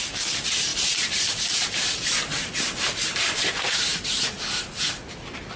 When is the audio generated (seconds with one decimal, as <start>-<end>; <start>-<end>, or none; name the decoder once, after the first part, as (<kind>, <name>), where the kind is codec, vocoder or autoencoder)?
0.7-4.1 (vocoder, BigVGAN v2)